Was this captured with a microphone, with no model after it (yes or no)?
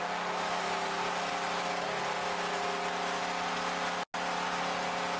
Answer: yes